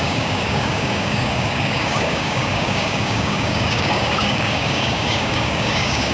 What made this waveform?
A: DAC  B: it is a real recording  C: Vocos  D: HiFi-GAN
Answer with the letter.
A